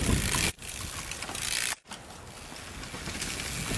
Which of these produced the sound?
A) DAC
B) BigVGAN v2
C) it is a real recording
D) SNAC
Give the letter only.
C